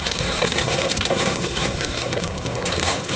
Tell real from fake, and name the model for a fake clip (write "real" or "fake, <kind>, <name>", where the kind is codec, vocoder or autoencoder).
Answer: fake, codec, SNAC